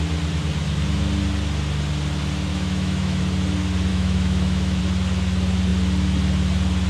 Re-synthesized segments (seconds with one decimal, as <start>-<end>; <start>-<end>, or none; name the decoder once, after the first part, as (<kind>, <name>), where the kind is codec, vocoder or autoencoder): 2.5-3.2 (autoencoder, DAC-VAE); 3.9-4.8